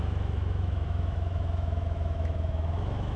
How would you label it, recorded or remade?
remade